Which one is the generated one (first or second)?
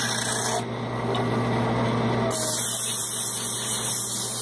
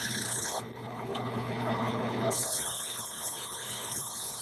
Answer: second